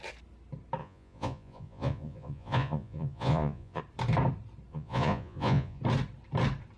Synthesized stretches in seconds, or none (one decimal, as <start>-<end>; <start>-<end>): 0.8-3.8; 4.7-5.8